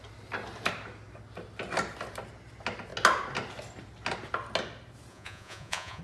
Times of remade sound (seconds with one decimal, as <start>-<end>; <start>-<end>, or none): 5.1-6.0